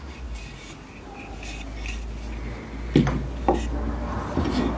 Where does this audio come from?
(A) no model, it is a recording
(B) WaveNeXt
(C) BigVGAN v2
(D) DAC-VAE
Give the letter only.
A